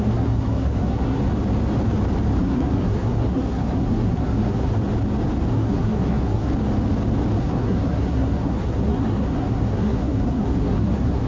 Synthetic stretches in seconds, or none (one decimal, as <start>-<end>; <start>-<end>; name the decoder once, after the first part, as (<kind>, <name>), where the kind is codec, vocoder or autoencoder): 0.0-1.2 (codec, SNAC); 2.4-4.7; 5.5-6.5; 7.4-11.3